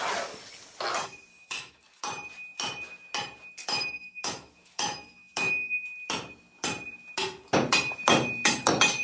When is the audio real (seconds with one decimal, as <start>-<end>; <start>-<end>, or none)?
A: 0.0-1.3; 2.0-3.6; 5.5-9.0